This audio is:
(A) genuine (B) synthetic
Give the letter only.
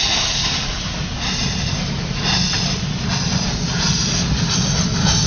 A